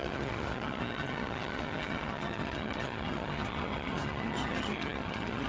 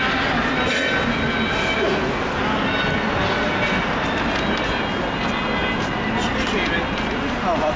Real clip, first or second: second